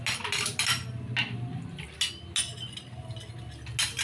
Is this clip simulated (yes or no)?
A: no